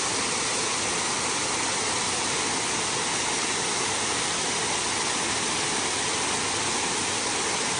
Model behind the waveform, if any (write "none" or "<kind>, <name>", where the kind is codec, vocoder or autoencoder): none